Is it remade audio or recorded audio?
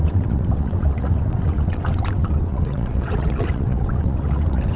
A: remade